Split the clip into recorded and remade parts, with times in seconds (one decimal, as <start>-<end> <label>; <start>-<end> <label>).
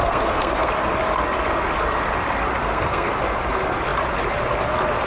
0.0-0.7 remade; 0.7-2.6 recorded; 2.6-3.1 remade; 3.1-5.1 recorded